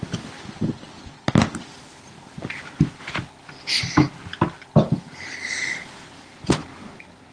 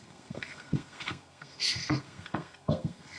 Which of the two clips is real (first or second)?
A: first